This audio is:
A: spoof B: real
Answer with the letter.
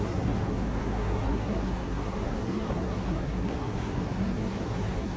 A